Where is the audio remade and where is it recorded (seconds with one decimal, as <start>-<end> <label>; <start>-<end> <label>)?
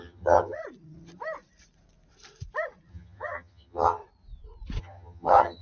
0.0-0.6 remade; 0.6-2.9 recorded; 2.9-4.0 remade; 4.0-4.8 recorded; 4.8-5.6 remade